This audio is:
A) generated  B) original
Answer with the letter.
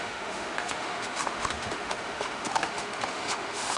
A